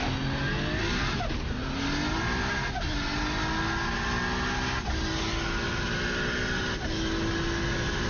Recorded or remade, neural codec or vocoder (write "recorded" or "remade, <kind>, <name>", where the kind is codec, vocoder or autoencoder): recorded